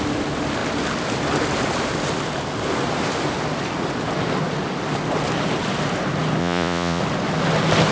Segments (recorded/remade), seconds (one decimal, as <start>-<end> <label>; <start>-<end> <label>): 0.0-6.4 recorded; 6.4-7.0 remade; 7.0-7.9 recorded